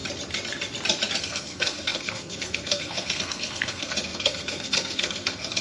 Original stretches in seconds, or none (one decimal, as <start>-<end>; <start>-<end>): 0.0-1.2